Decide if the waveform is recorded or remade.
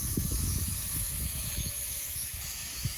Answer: remade